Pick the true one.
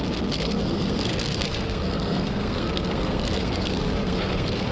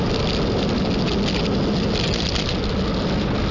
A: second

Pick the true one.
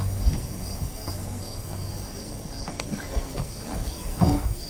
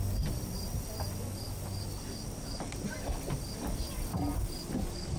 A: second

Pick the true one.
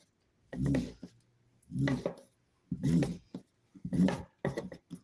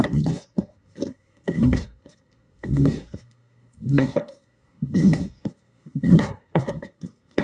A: first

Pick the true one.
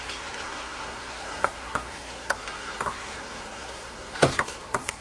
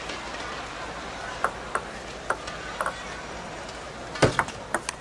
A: second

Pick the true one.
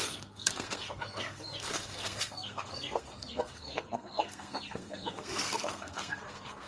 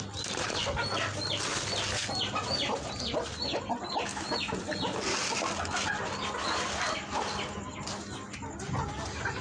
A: second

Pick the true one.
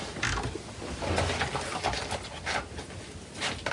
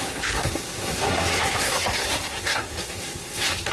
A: first